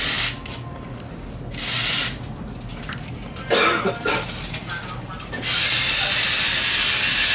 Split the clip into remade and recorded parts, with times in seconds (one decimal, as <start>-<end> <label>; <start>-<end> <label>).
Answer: 0.0-7.3 recorded